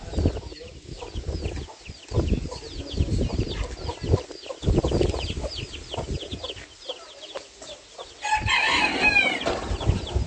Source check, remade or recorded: recorded